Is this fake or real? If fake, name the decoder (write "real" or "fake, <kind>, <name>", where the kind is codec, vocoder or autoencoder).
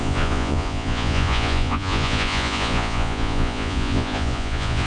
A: fake, vocoder, Vocos